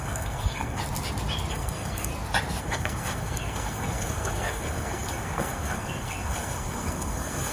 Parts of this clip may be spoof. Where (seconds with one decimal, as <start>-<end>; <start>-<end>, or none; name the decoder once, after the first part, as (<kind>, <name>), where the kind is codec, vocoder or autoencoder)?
0.0-0.8 (codec, SNAC); 1.5-2.1; 2.6-7.5